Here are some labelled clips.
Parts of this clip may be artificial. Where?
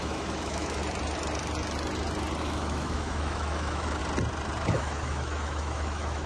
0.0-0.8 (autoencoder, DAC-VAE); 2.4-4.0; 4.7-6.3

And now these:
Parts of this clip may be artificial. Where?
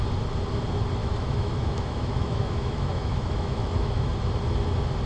1.0-4.1 (autoencoder, DAC-VAE)